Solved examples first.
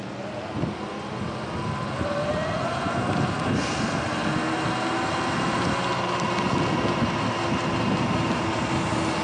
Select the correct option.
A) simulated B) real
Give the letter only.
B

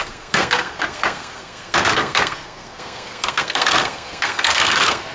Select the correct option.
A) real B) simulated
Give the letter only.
B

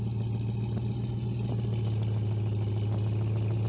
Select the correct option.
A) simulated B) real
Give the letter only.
B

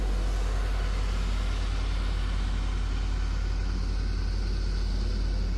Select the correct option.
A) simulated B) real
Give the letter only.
B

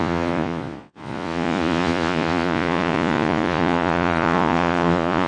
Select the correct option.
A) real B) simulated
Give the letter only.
B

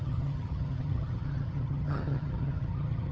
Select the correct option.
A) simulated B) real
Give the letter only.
A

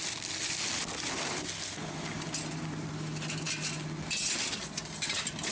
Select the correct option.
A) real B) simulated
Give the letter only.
A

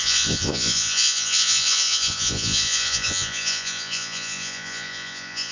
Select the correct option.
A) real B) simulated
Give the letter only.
B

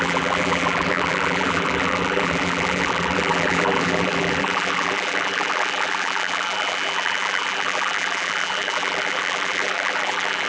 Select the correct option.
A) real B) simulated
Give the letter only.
B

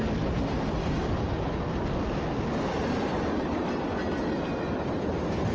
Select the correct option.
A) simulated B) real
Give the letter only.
B